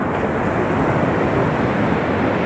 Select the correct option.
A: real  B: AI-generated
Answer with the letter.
A